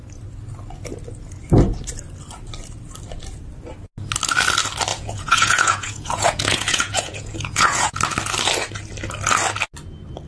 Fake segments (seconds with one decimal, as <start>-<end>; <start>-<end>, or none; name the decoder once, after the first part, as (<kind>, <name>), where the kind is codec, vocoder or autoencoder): 4.9-8.0 (vocoder, Vocos)